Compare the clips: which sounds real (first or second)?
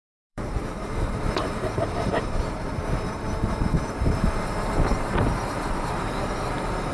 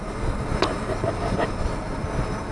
second